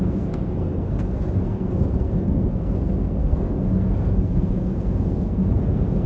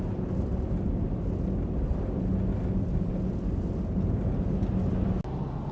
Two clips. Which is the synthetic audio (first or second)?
first